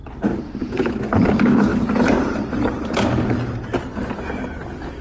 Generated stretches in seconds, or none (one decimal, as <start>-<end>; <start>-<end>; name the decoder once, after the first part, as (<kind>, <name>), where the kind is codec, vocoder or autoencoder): none